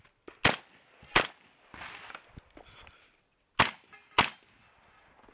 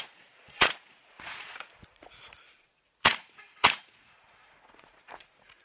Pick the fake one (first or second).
second